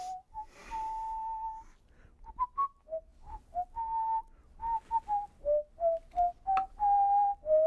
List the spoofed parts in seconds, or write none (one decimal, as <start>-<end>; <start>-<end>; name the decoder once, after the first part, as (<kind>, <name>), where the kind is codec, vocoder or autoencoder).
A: none